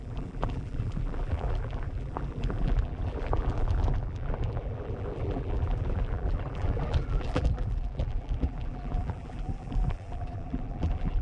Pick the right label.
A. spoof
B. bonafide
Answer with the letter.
A